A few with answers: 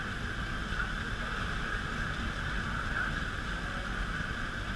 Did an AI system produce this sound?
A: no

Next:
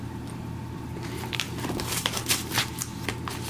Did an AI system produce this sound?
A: yes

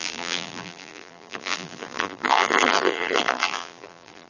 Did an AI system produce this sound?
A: yes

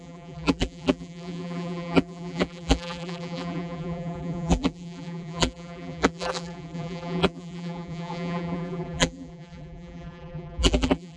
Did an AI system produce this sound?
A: yes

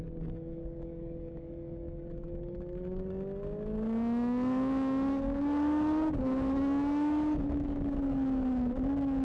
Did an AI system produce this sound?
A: yes